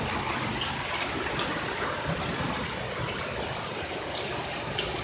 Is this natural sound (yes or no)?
yes